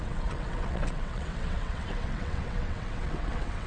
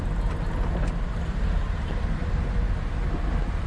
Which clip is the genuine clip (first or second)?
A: second